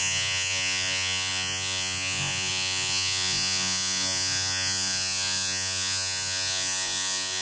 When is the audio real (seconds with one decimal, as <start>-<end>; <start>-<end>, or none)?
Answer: none